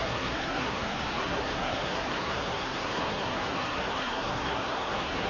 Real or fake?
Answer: fake